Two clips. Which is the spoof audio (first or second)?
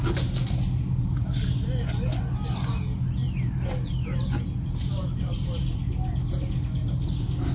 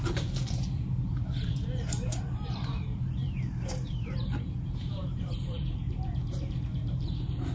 second